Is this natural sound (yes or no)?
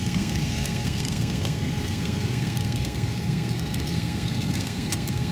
no